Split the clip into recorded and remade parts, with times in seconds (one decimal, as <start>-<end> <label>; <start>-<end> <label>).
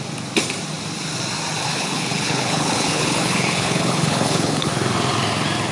0.0-1.6 recorded; 1.6-4.7 remade; 4.7-5.7 recorded